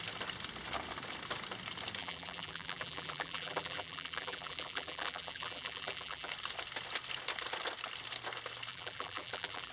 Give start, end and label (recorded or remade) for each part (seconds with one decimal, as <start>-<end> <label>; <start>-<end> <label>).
0.0-2.0 recorded; 2.0-6.3 remade; 6.3-8.7 recorded; 8.7-9.7 remade